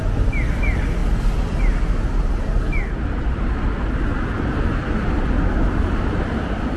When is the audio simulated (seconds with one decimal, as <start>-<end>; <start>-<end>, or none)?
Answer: 1.0-1.6